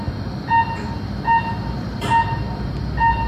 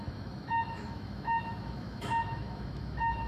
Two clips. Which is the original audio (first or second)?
first